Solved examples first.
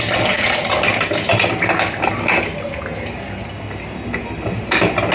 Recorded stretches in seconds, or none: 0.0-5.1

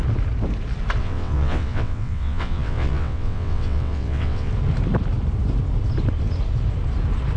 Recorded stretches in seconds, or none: 0.0-1.0; 4.5-7.4

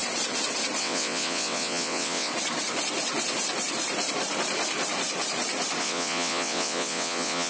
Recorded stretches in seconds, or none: 0.0-0.8; 2.3-5.8

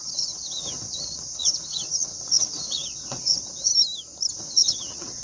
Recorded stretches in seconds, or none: 3.7-4.3

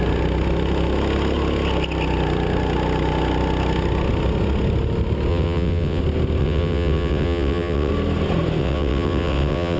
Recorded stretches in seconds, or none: 0.0-5.3; 6.0-6.4; 7.9-8.6

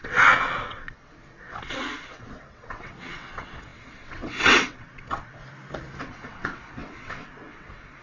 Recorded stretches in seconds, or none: 5.4-6.0